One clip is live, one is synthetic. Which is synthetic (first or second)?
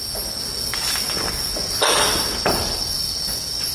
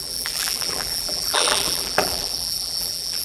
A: second